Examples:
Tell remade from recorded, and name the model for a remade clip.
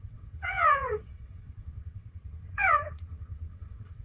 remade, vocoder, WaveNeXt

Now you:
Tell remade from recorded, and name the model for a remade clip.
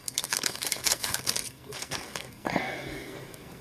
remade, codec, SNAC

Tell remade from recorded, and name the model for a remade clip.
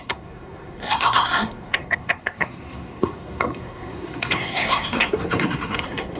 remade, codec, SNAC